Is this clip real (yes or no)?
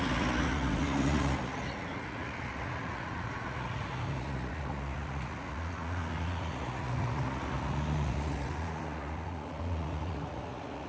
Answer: no